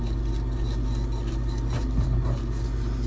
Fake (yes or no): no